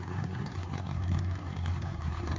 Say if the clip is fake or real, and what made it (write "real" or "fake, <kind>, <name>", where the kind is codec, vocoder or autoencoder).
fake, codec, SNAC